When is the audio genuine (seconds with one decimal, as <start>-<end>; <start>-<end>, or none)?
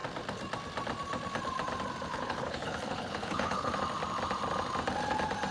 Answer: 0.0-2.1; 3.7-5.5